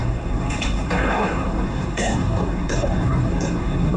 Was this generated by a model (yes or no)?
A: yes